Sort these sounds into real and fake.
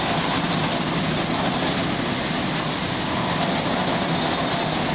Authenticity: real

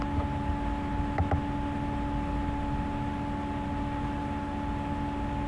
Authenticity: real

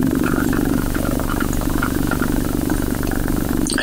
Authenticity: fake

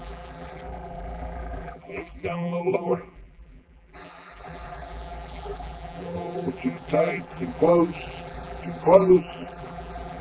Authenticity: fake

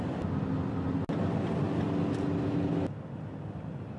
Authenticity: real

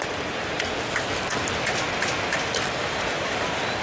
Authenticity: fake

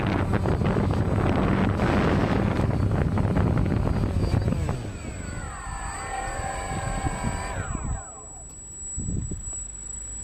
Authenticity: real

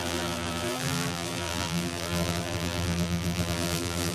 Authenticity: fake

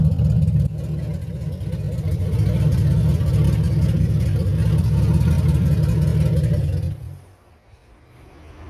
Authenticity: real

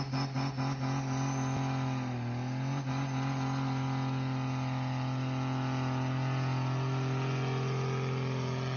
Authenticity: real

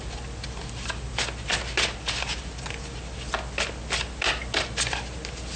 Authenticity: real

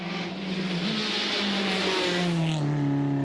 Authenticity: real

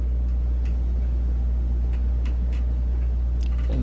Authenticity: real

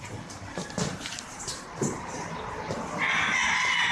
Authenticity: fake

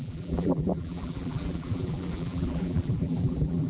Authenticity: fake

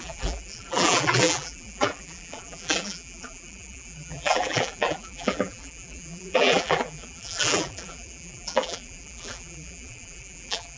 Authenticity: fake